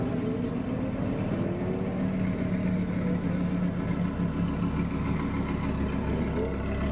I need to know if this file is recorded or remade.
recorded